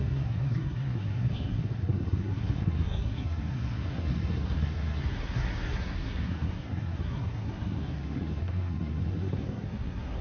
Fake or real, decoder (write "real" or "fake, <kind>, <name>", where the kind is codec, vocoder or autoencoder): fake, codec, SNAC